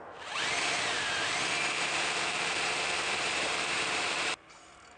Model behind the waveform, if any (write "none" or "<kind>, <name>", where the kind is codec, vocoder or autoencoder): vocoder, BigVGAN v2